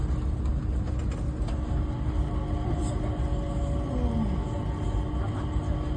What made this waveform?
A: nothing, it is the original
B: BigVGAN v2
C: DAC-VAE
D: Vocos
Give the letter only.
A